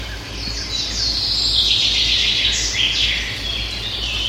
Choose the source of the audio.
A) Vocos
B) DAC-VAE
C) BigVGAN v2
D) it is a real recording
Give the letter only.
D